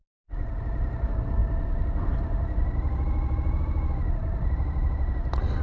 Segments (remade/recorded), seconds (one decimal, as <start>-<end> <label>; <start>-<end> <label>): 0.0-0.6 remade; 0.6-5.6 recorded